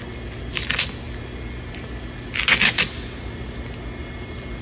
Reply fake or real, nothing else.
real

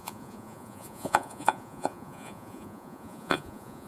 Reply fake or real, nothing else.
fake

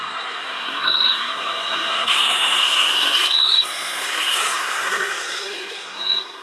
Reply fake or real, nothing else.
fake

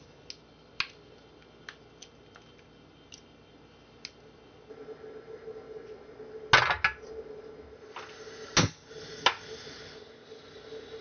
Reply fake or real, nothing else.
real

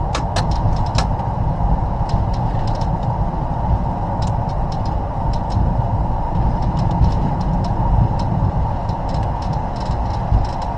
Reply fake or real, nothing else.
real